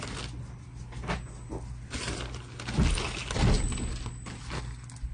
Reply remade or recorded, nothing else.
recorded